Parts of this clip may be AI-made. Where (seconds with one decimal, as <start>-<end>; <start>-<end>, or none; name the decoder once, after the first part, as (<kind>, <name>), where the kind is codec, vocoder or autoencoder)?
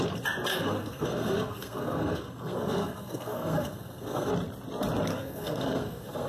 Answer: 0.5-4.3 (codec, SNAC); 5.1-6.3